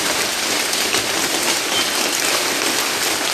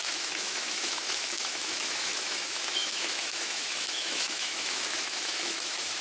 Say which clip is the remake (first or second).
second